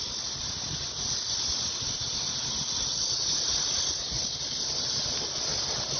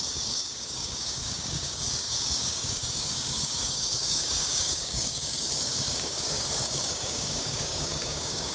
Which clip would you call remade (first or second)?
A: second